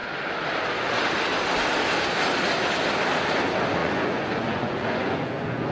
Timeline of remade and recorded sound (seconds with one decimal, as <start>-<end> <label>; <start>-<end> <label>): 0.0-3.8 recorded; 3.8-5.7 remade